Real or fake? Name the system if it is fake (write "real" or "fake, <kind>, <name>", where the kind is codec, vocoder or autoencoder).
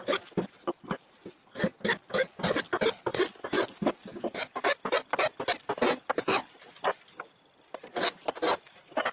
real